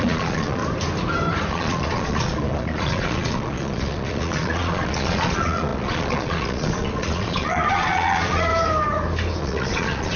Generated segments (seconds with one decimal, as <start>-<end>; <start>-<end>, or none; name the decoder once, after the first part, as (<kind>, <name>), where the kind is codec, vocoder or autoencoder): 0.0-0.6 (vocoder, Vocos); 1.5-8.5; 9.4-10.2